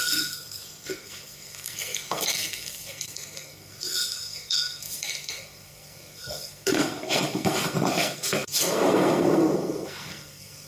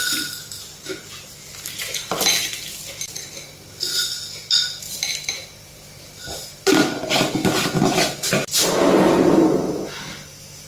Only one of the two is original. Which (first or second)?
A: second